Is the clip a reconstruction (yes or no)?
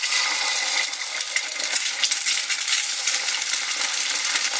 no